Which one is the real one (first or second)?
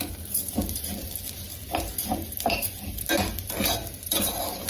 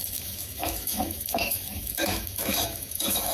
first